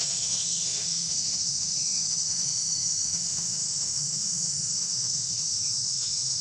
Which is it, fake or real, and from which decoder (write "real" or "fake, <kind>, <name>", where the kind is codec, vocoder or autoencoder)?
fake, autoencoder, DAC-VAE